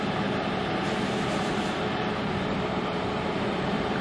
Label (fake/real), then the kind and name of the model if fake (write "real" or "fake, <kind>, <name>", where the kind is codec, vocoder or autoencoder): fake, vocoder, BigVGAN v2